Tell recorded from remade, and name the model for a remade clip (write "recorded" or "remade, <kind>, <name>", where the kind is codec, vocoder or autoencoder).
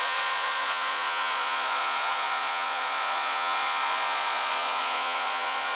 remade, vocoder, Vocos